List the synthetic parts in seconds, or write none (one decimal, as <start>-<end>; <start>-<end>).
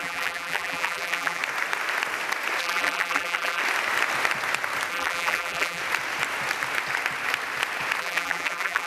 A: 0.0-1.4; 2.6-3.6; 4.9-5.8; 8.0-8.9